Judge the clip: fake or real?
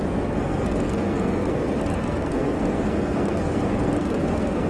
fake